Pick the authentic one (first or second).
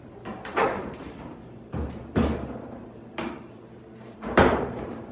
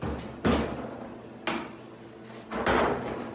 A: second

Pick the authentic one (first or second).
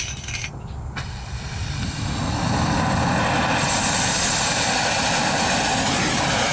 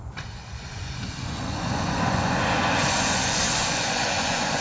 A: first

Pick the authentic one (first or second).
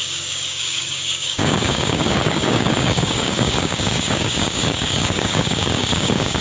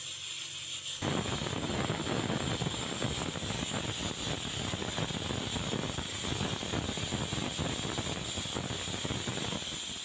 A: second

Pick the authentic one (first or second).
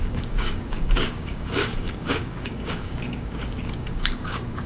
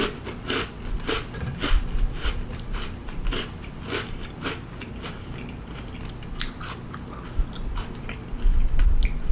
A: second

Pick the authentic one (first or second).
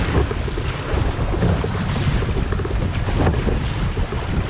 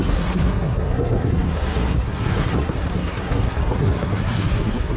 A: first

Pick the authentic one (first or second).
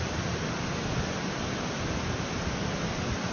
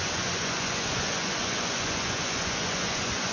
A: first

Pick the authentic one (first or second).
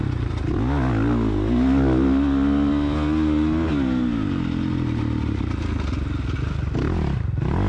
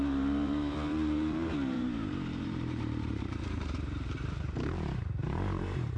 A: first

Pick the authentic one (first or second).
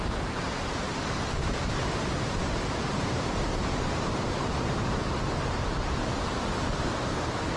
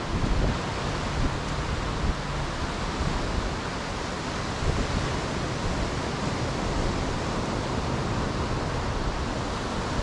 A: second